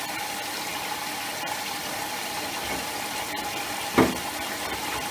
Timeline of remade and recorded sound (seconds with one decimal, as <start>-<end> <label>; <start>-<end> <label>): 0.0-5.1 recorded

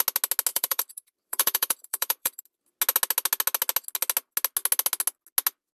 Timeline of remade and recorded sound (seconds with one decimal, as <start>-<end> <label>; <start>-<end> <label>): 0.0-0.5 recorded; 0.5-2.4 remade; 2.4-5.7 recorded

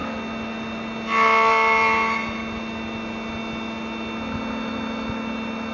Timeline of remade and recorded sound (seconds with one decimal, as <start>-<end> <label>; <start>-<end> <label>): 0.0-5.7 recorded